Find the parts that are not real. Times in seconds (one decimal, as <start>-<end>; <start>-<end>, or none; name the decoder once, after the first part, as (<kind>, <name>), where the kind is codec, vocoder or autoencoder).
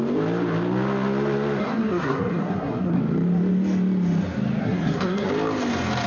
1.6-3.0 (codec, SNAC); 4.6-5.3